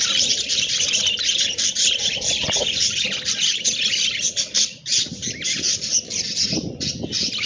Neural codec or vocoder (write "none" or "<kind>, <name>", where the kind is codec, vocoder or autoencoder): vocoder, BigVGAN v2